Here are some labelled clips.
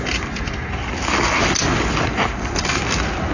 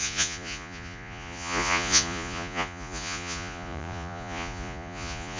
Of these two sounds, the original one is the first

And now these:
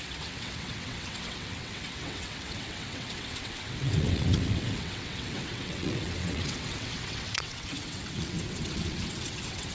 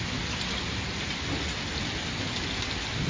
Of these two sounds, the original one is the second